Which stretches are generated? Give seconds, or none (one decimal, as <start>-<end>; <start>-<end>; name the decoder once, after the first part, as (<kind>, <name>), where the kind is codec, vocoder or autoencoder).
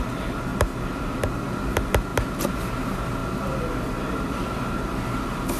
none